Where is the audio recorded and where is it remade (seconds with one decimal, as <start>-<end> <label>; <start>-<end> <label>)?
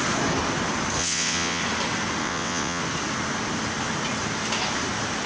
0.0-1.0 recorded; 1.0-1.6 remade; 1.6-2.2 recorded; 2.2-2.8 remade; 2.8-5.3 recorded